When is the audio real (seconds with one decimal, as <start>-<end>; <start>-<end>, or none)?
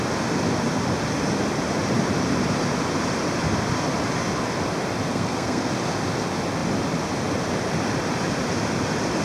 0.0-5.1; 5.7-9.2